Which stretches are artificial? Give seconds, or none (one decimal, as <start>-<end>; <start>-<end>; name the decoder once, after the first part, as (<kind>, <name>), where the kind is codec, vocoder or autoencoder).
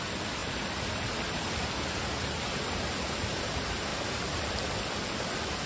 3.9-4.5 (vocoder, BigVGAN v2)